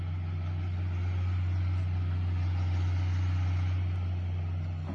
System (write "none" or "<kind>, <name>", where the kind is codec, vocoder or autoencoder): none